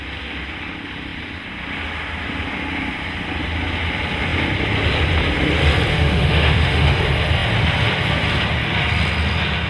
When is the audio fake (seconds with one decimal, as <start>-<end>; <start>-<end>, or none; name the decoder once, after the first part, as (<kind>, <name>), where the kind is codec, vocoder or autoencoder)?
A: 5.9-7.0 (autoencoder, DAC-VAE)